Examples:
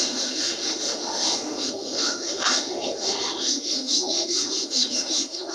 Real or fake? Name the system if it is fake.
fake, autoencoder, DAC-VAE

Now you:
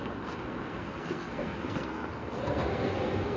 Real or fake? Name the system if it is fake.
fake, codec, SNAC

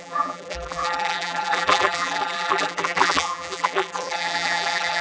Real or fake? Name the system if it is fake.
fake, vocoder, BigVGAN v2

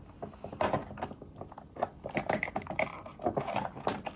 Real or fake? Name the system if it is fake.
real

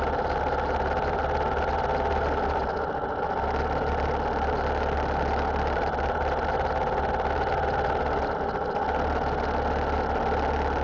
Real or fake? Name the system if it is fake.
real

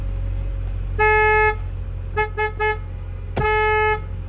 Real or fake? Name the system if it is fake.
real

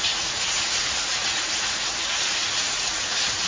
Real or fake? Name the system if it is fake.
fake, vocoder, Vocos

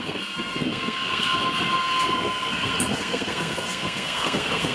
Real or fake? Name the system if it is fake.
fake, codec, SNAC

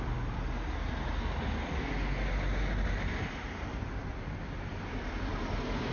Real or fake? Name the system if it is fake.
real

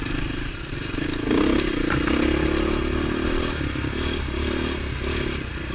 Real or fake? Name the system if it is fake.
real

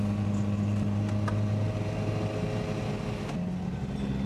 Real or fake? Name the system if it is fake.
real